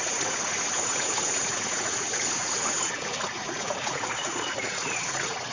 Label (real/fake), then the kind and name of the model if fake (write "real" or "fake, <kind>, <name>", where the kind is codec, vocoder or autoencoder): fake, vocoder, Vocos